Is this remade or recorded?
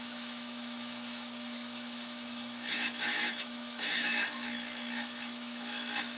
remade